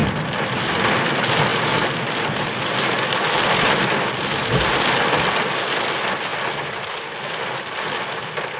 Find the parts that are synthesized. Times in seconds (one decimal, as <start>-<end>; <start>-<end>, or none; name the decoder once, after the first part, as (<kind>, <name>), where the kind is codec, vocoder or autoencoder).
none